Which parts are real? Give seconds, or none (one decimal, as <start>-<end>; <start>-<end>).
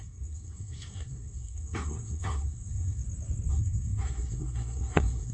3.0-3.5